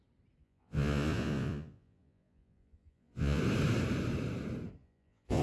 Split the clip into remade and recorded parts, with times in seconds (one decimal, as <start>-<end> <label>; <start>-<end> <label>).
0.0-0.4 recorded; 0.4-3.4 remade; 3.4-4.8 recorded; 4.8-5.4 remade

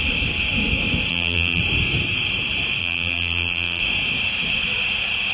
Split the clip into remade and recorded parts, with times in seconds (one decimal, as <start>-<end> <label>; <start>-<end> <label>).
0.0-1.1 recorded; 1.1-1.6 remade; 1.6-2.8 recorded; 2.8-3.8 remade; 3.8-5.3 recorded